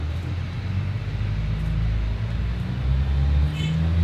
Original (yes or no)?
yes